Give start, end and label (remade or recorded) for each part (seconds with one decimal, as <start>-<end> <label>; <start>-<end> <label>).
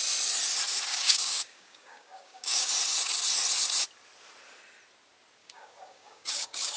0.0-0.9 recorded; 0.9-2.7 remade; 2.7-5.4 recorded; 5.4-6.8 remade